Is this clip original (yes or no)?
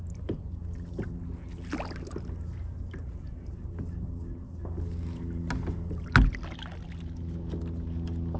yes